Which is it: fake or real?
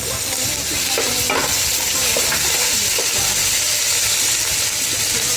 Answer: real